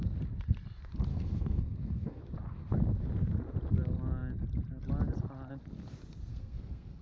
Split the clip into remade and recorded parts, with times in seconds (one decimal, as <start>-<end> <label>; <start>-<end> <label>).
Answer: 0.0-1.1 recorded; 1.1-2.2 remade; 2.2-6.3 recorded; 6.3-7.0 remade

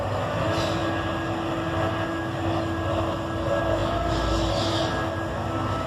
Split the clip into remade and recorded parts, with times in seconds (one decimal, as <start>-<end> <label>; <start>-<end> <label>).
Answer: 0.0-5.9 recorded

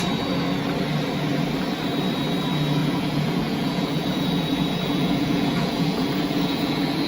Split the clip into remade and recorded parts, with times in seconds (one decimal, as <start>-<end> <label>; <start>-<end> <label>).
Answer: 0.0-2.8 recorded; 2.8-7.1 remade

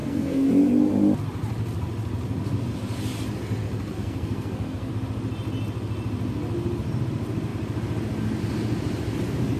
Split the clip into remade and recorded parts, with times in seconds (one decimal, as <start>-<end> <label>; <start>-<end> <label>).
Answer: 0.0-0.5 remade; 0.5-3.9 recorded; 3.9-4.9 remade; 4.9-9.6 recorded

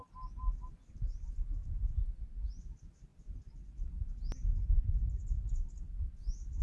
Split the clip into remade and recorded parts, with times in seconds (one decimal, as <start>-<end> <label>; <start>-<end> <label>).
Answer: 0.0-6.6 recorded

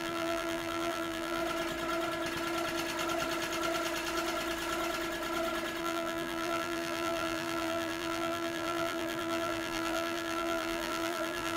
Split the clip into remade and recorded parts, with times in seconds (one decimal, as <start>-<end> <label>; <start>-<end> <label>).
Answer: 0.0-1.4 remade; 1.4-5.8 recorded; 5.8-11.6 remade

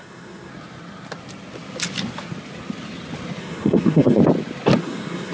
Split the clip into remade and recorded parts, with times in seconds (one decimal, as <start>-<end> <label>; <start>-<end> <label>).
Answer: 0.0-0.5 remade; 0.5-3.4 recorded; 3.4-4.2 remade; 4.2-4.8 recorded; 4.8-5.3 remade

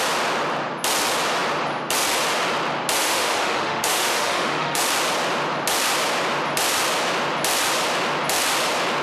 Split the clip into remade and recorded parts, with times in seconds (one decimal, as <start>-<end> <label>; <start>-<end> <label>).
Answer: 0.0-3.0 recorded; 3.0-4.8 remade; 4.8-9.0 recorded